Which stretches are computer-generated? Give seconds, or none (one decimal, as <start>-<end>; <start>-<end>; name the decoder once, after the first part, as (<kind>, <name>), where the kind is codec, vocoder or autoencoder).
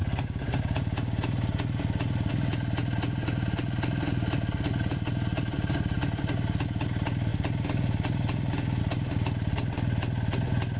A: none